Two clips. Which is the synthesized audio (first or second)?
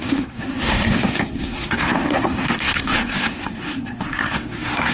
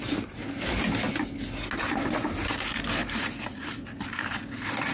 first